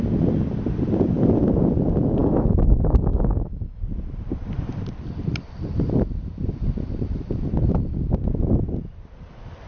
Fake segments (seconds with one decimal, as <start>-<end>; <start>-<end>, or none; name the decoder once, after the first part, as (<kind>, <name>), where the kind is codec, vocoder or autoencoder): 2.2-3.8 (autoencoder, DAC-VAE)